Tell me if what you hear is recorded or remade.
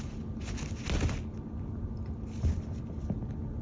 recorded